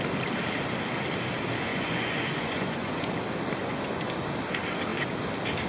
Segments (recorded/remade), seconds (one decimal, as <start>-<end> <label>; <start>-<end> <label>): 0.0-1.7 recorded; 1.7-3.1 remade; 3.1-3.6 recorded; 3.6-4.2 remade; 4.2-5.7 recorded